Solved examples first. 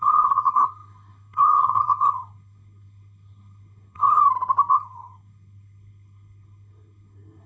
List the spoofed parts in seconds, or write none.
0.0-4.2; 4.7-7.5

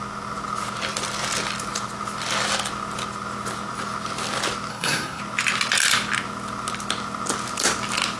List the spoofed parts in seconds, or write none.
4.7-5.2

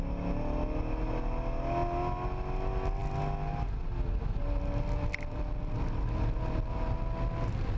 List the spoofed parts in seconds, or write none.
none

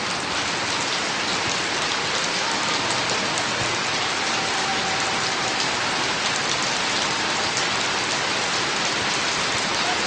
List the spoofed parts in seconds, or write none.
none